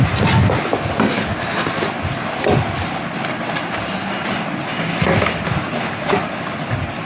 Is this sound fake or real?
real